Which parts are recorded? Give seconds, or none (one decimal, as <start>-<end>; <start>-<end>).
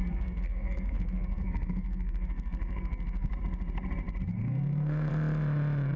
3.3-4.3; 5.1-6.0